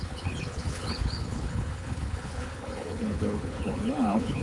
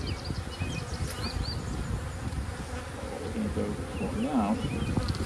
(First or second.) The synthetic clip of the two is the first